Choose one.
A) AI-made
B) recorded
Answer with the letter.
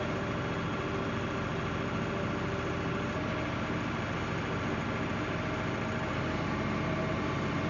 B